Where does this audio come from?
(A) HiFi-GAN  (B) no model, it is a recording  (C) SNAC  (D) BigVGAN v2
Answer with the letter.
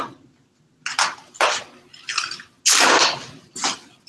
B